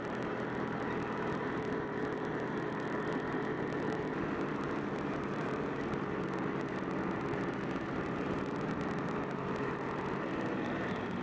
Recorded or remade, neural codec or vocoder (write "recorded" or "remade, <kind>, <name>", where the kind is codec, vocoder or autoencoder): remade, vocoder, BigVGAN v2